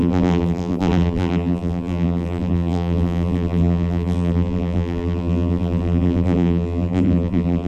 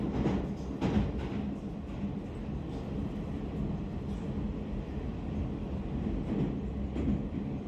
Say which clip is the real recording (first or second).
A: second